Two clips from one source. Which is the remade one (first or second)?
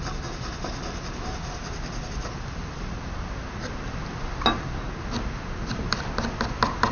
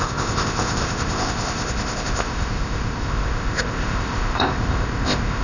second